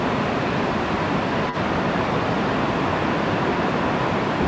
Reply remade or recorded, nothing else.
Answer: remade